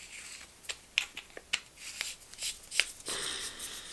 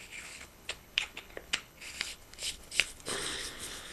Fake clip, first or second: second